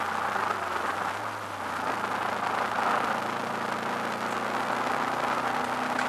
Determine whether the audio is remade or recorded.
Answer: recorded